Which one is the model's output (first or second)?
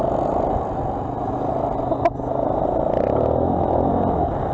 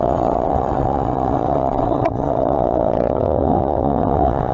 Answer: second